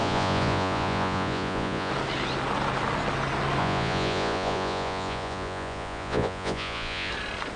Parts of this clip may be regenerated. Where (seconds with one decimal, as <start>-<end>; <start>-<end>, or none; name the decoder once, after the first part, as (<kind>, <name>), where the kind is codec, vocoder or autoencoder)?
0.0-1.9 (vocoder, Vocos); 3.6-7.1